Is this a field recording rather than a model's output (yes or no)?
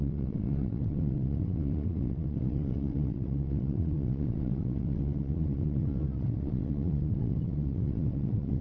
no